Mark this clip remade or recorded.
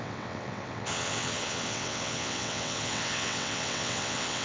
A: remade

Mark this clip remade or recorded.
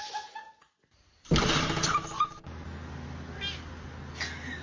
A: recorded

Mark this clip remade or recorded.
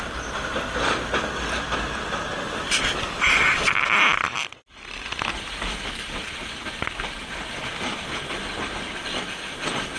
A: recorded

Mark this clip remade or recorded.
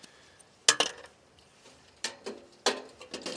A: recorded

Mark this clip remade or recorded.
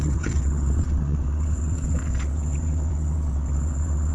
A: remade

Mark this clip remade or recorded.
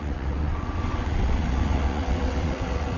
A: remade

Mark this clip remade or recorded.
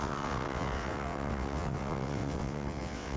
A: remade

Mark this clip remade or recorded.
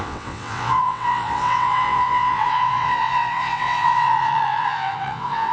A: remade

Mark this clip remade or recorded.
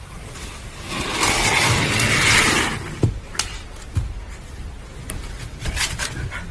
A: recorded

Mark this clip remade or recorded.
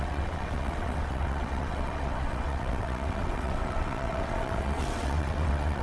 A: remade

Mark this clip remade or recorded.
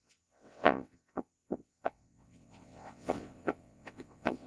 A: remade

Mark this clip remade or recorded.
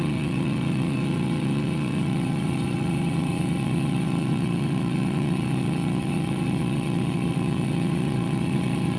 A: remade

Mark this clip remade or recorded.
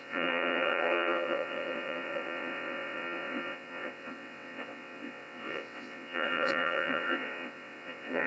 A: remade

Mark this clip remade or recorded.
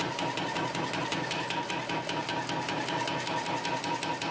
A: recorded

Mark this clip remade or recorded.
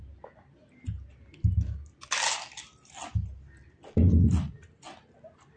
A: recorded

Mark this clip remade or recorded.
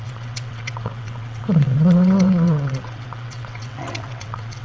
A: remade